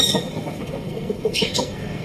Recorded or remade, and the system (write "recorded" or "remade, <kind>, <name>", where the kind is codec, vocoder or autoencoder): remade, codec, SNAC